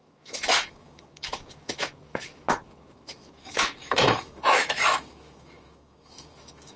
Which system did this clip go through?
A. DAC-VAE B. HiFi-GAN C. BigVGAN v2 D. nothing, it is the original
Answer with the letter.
A